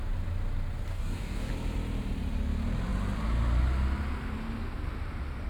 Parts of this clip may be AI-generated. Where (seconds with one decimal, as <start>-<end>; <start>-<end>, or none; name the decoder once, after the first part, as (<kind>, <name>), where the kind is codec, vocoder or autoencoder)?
0.9-1.5 (codec, DAC)